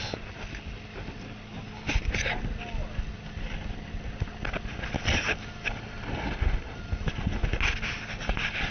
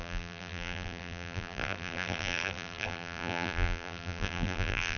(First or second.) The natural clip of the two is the first